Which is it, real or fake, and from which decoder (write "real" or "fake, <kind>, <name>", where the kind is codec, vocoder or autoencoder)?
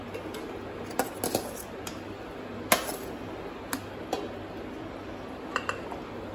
real